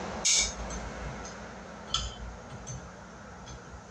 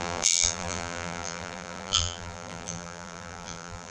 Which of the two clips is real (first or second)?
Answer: first